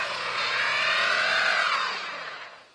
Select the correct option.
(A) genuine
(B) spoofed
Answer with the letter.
B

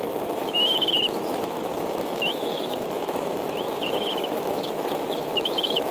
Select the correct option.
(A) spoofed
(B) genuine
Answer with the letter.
A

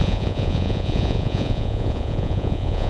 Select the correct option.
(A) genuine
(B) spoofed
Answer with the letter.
B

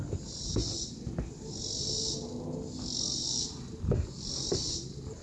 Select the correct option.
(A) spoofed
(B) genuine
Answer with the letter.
B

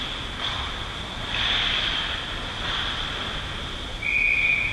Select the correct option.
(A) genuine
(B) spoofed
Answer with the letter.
A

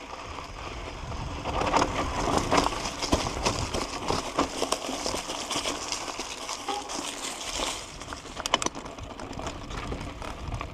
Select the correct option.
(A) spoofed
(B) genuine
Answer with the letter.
B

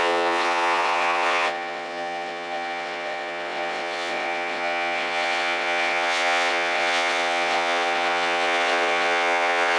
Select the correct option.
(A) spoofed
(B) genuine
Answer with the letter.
A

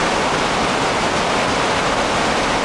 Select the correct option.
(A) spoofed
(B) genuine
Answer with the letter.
B